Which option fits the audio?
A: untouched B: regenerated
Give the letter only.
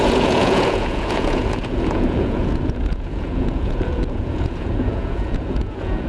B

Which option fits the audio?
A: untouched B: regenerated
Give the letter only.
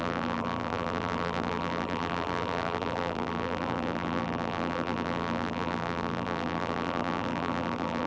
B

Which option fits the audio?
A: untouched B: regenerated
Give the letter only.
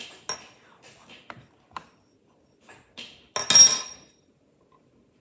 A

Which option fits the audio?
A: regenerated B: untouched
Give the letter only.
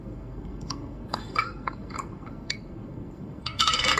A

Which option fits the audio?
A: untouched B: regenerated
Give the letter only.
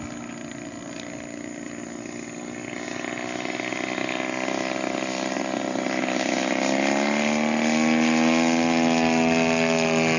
A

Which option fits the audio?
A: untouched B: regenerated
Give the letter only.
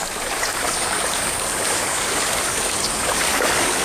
B